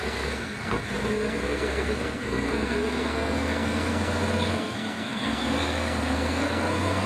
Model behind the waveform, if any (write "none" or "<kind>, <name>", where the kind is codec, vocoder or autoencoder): codec, SNAC